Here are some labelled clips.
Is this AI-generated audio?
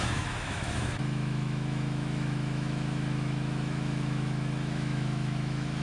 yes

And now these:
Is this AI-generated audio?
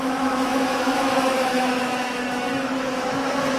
yes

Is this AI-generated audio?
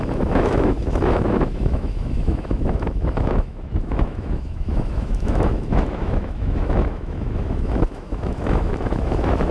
yes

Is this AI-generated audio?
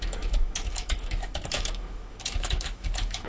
yes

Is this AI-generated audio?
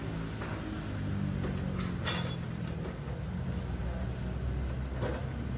no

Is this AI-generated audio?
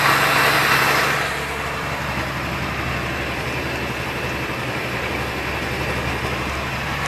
no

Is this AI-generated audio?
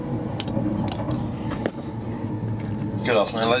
no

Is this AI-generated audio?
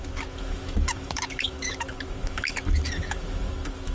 yes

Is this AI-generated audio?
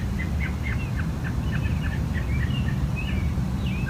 no